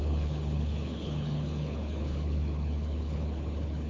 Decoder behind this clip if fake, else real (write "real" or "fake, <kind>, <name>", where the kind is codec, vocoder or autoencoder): fake, codec, HILCodec